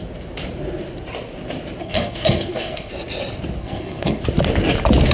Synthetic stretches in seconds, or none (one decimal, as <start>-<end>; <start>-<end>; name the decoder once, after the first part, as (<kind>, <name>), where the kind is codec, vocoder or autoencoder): 1.8-2.9 (codec, SNAC); 3.6-4.2